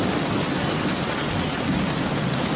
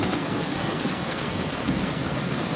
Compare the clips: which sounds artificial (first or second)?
second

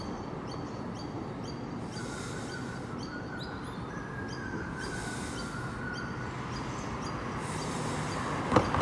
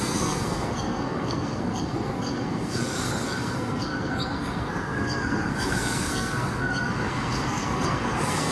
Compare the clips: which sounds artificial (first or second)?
second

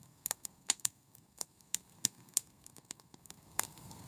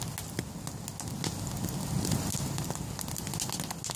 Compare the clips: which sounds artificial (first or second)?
first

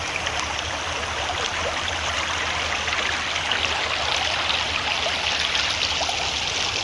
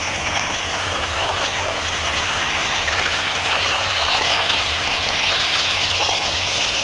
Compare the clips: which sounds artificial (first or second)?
second